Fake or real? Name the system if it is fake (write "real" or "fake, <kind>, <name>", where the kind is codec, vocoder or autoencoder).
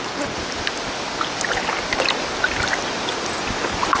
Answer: real